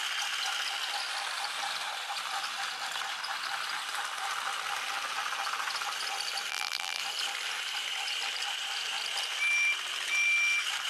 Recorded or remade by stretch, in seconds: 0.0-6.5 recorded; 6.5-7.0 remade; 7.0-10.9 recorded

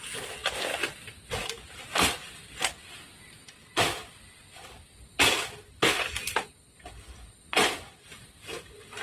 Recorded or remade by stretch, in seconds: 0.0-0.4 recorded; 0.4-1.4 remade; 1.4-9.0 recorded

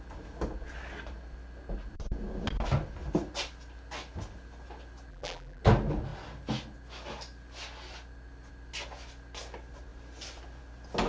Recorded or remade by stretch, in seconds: 0.0-5.1 recorded; 5.1-5.6 remade; 5.6-11.1 recorded